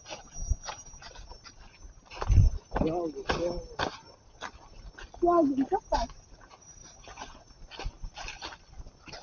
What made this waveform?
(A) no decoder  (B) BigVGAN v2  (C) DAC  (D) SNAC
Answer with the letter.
A